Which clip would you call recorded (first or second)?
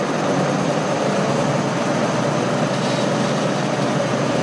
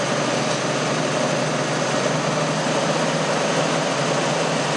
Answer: second